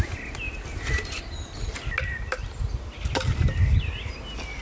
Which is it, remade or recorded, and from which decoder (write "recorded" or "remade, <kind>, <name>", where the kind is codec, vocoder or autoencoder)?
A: recorded